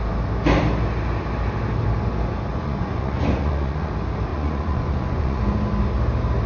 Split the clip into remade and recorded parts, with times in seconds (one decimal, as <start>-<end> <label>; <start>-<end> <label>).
0.0-2.5 recorded; 2.5-3.9 remade; 3.9-4.3 recorded; 4.3-5.4 remade; 5.4-6.5 recorded